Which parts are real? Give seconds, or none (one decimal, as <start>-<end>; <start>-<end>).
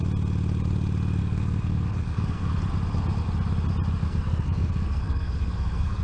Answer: 0.0-1.2; 2.5-4.0